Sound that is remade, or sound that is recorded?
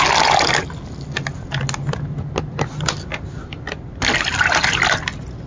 recorded